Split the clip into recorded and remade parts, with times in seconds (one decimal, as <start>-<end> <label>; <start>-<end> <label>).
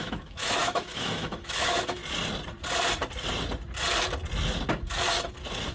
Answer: 0.0-2.0 remade; 2.0-5.7 recorded